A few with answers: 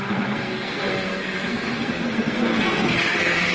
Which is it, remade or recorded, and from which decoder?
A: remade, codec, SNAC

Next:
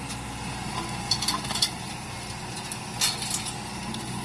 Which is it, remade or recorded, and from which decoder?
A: recorded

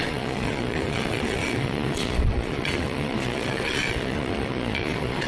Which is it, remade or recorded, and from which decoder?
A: remade, vocoder, Vocos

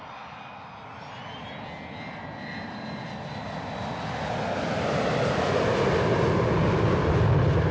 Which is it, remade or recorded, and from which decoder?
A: recorded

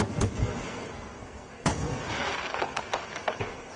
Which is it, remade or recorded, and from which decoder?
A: remade, codec, SNAC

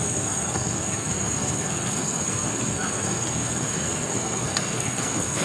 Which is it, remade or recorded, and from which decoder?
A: remade, codec, SNAC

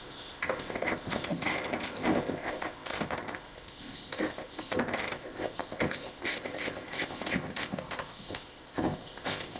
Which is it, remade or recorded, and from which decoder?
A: remade, codec, ZipCodec